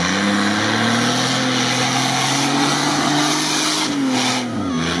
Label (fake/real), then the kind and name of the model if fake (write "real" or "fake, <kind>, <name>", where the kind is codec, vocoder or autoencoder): real